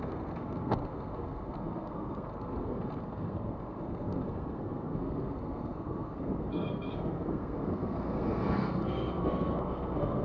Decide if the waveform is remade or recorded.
remade